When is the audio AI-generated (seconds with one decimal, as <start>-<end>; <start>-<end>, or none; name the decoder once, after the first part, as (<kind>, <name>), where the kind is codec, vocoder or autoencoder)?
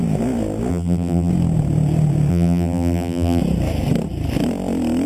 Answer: 0.7-1.3 (vocoder, BigVGAN v2); 2.3-3.4